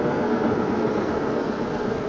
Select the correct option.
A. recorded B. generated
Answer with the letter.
B